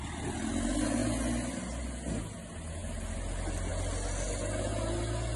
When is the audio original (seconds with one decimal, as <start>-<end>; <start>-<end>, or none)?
0.0-5.4